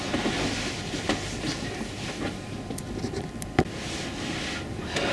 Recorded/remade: recorded